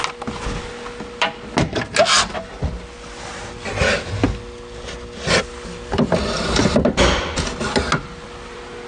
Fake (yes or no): no